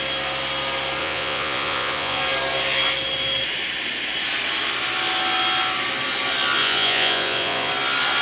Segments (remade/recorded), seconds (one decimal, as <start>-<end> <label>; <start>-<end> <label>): 0.0-1.0 recorded; 1.0-2.2 remade; 2.2-6.6 recorded; 6.6-7.7 remade; 7.7-8.2 recorded